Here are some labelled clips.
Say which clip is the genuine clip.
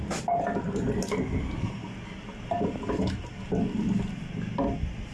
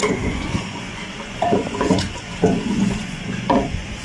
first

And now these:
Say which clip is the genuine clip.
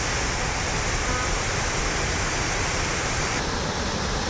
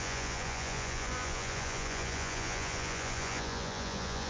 first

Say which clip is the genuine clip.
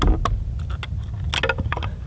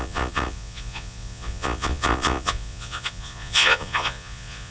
first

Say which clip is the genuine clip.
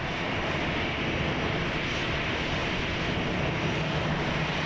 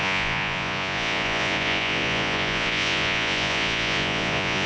first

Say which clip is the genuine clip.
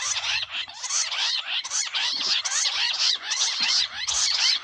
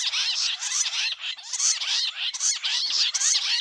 second